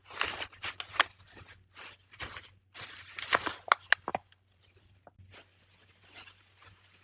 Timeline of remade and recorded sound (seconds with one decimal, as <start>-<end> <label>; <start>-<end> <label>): 0.0-7.0 recorded